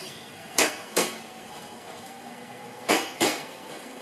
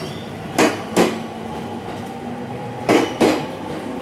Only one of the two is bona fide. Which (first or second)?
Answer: second